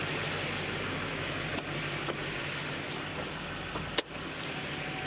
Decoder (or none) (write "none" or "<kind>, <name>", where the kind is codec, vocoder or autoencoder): none